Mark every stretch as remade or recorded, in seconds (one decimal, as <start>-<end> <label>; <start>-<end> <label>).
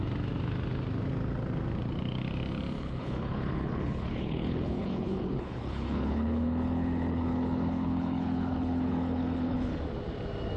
0.0-2.8 recorded; 2.8-9.7 remade; 9.7-10.6 recorded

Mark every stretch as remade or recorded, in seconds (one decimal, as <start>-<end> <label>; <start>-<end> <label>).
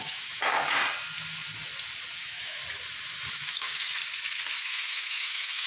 0.0-0.8 remade; 0.8-2.2 recorded; 2.2-2.6 remade; 2.6-3.3 recorded; 3.3-4.0 remade; 4.0-4.6 recorded; 4.6-5.7 remade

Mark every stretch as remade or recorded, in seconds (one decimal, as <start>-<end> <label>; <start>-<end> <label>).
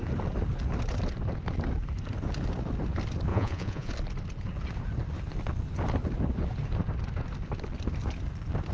0.0-3.3 recorded; 3.3-3.9 remade; 3.9-8.7 recorded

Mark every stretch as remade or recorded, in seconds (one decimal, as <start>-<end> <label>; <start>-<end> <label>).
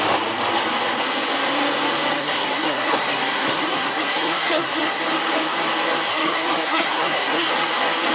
0.0-2.2 recorded; 2.2-5.0 remade; 5.0-6.1 recorded; 6.1-7.5 remade; 7.5-8.1 recorded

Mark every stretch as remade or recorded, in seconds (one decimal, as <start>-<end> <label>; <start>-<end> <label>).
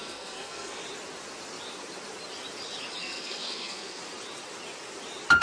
0.0-0.8 remade; 0.8-3.0 recorded; 3.0-4.0 remade; 4.0-5.4 recorded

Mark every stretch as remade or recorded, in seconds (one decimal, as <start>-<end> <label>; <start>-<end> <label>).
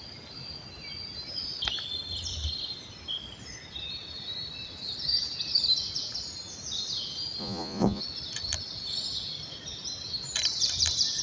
0.0-7.4 recorded; 7.4-8.0 remade; 8.0-11.2 recorded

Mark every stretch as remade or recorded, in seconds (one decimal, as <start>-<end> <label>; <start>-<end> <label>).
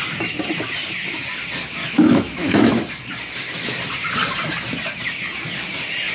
0.0-1.8 recorded; 1.8-2.9 remade; 2.9-6.1 recorded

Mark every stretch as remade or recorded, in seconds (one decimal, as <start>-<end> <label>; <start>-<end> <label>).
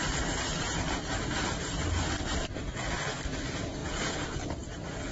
0.0-1.6 remade; 1.6-3.8 recorded; 3.8-5.1 remade